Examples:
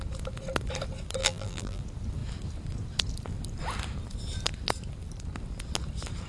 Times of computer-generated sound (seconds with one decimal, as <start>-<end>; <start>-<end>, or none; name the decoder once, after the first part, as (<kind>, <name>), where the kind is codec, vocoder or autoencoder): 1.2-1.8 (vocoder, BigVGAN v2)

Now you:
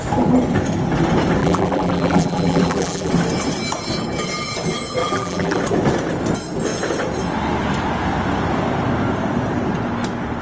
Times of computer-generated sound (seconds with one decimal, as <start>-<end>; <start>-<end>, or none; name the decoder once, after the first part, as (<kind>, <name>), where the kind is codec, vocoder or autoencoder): 1.4-3.1 (vocoder, BigVGAN v2); 5.0-5.6

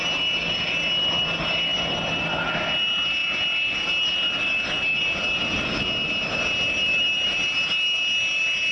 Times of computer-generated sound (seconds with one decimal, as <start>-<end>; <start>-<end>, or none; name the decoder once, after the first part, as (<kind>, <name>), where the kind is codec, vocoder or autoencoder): none

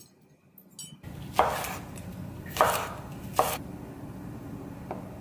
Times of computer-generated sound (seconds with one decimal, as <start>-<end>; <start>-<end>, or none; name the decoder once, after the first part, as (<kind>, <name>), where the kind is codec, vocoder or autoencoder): none

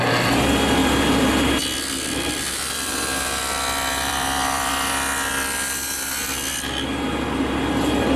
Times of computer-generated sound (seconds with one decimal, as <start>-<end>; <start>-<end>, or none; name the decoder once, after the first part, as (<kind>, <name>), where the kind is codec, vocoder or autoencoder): 2.1-4.7 (vocoder, BigVGAN v2)